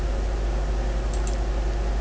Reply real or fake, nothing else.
real